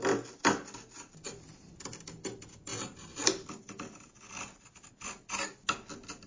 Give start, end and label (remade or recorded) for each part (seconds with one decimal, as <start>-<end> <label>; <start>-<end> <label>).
0.0-6.3 recorded